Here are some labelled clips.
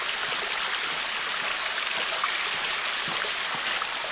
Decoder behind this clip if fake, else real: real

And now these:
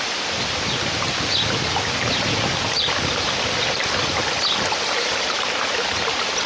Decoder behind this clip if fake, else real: real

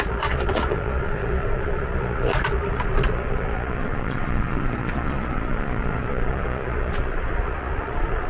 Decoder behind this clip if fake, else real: fake, vocoder, Vocos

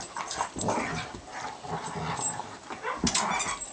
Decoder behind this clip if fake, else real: real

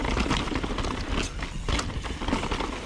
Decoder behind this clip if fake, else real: real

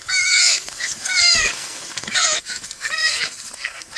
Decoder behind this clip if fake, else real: fake, codec, SNAC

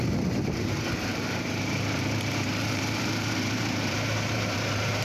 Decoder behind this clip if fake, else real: fake, vocoder, BigVGAN v2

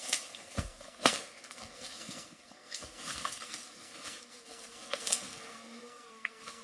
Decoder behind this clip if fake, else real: fake, codec, SNAC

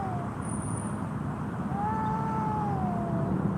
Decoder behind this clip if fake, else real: real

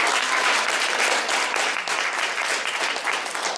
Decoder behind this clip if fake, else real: fake, vocoder, BigVGAN v2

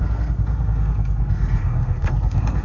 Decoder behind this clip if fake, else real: fake, codec, SNAC